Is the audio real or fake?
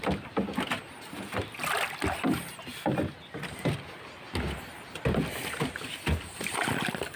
real